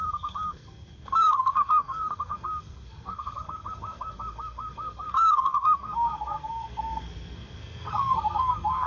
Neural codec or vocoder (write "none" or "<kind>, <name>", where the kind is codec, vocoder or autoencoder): codec, SNAC